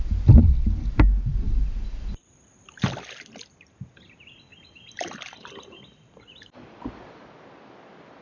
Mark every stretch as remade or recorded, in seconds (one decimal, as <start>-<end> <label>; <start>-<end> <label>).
0.0-4.5 recorded; 4.5-6.9 remade; 6.9-8.2 recorded